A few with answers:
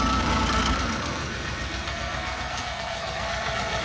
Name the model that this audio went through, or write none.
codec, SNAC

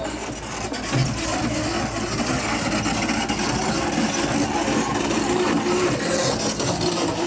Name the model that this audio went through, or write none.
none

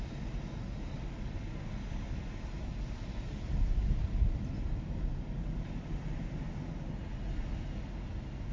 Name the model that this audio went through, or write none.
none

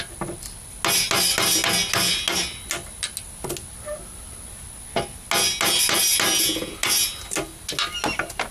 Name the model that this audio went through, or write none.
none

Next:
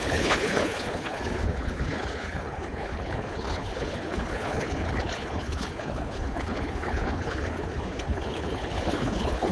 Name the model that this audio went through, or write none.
codec, HILCodec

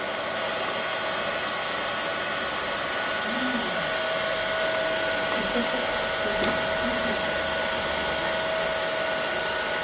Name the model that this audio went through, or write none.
none